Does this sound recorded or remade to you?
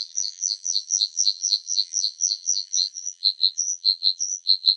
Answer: remade